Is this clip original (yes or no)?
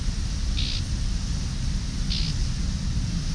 yes